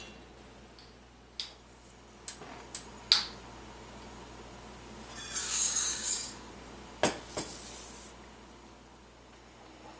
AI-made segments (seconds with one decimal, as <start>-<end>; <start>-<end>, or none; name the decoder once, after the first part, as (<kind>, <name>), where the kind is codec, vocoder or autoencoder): 5.4-6.5 (codec, DAC)